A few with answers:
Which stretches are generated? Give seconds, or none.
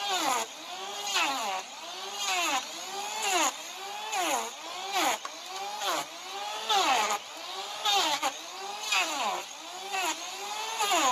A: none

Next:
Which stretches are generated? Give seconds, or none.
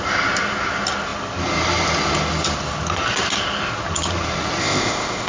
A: 4.6-5.3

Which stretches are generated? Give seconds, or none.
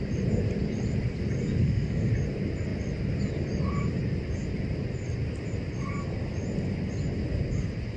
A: 1.6-2.1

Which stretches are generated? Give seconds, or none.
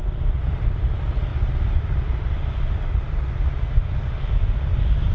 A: none